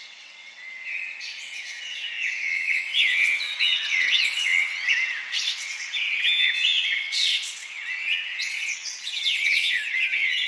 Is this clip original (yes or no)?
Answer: no